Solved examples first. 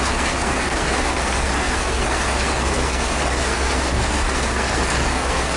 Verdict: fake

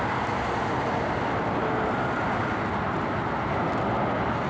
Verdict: real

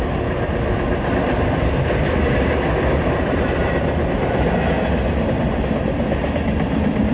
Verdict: real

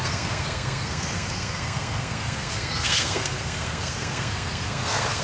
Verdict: fake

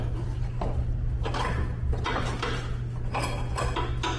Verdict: real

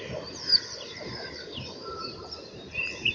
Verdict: fake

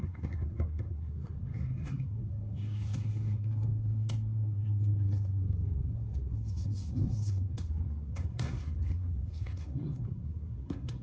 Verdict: fake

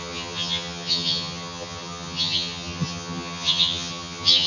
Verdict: fake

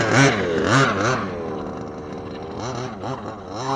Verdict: real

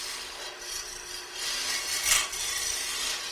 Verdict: real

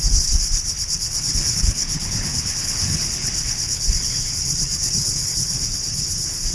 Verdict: fake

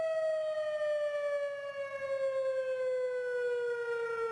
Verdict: real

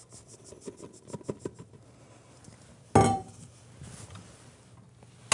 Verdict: real